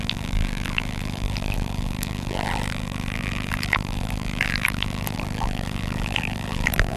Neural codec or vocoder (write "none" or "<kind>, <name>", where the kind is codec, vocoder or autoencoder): vocoder, BigVGAN v2